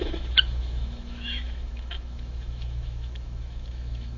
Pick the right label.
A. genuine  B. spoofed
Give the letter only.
B